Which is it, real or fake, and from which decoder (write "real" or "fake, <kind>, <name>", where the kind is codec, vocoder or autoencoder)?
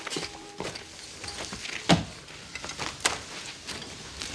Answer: real